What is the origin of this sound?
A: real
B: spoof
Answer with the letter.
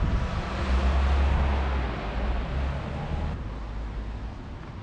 A